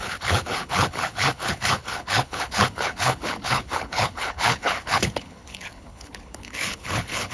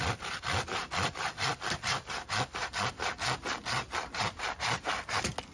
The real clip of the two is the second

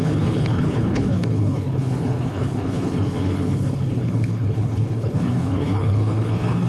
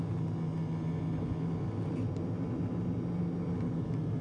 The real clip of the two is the second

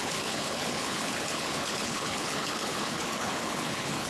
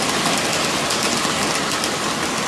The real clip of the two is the second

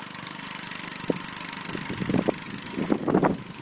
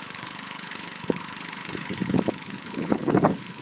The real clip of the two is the first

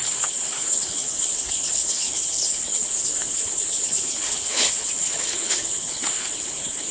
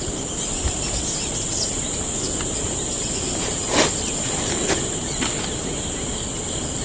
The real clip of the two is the second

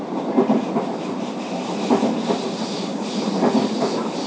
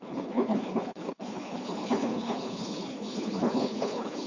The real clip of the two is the first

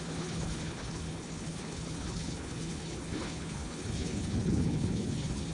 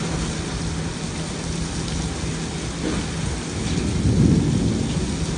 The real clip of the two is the second